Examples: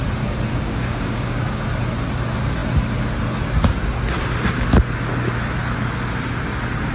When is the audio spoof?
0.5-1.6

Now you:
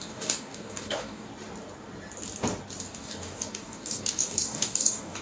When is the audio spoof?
0.0-1.3; 2.8-5.2

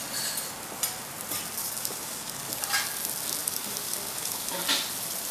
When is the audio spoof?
1.6-2.6; 3.4-4.6

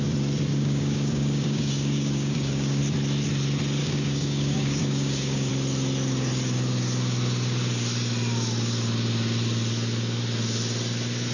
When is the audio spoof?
0.5-2.8; 3.8-5.5

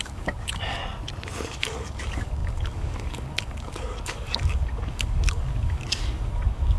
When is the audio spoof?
0.0-0.8; 1.5-6.8

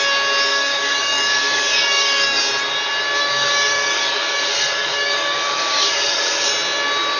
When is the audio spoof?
0.5-2.4; 3.2-6.5

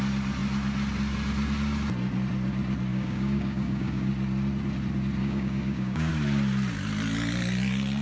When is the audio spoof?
2.9-4.1; 5.2-6.1

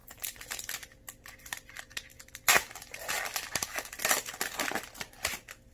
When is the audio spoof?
none